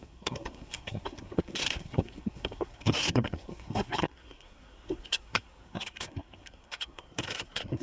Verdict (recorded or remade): remade